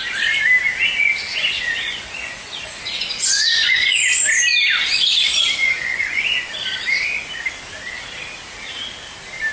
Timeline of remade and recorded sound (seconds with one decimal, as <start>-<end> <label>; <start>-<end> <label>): 0.0-1.3 recorded; 1.3-4.2 remade; 4.2-5.6 recorded; 5.6-6.5 remade; 6.5-9.5 recorded